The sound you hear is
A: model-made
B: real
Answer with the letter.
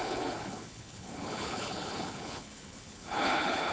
A